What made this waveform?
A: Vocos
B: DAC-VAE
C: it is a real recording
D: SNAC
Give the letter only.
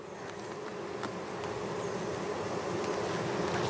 C